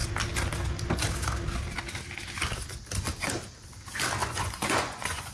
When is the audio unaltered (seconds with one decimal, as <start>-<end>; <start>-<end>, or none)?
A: 0.0-4.2